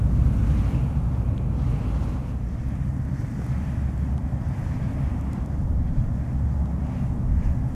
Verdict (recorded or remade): recorded